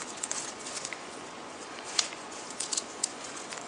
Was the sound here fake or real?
fake